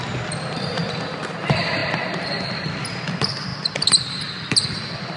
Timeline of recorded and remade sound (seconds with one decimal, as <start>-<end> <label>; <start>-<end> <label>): 0.0-5.2 recorded